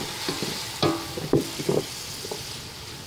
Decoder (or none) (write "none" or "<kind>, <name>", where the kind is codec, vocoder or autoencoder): none